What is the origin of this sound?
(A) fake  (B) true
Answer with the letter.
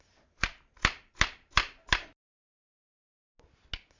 B